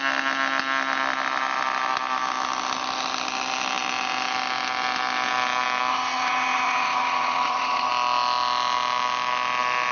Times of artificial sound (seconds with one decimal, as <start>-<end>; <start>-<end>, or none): 5.9-7.9